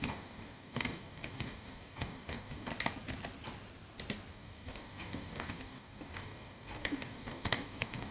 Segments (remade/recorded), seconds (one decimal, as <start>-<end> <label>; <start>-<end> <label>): 0.0-2.7 remade; 2.7-4.3 recorded; 4.3-8.1 remade